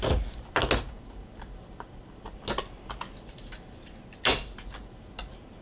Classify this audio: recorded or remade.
recorded